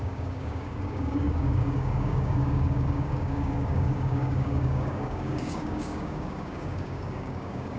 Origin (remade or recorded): remade